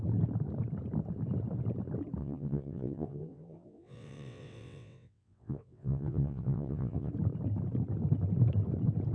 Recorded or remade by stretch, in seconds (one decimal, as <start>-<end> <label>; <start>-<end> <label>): 0.0-2.2 recorded; 2.2-7.1 remade; 7.1-9.1 recorded